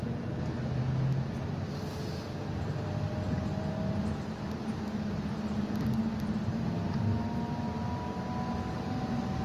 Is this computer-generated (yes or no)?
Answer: no